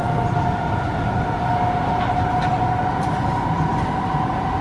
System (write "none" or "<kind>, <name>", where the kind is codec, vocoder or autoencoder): none